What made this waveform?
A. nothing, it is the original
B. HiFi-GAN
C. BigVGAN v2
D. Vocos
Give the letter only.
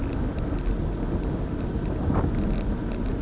A